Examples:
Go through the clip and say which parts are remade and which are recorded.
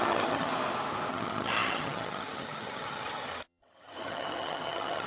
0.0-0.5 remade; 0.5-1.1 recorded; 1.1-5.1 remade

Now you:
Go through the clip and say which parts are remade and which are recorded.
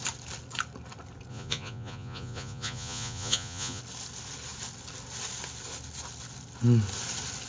0.0-1.3 recorded; 1.3-3.8 remade; 3.8-7.5 recorded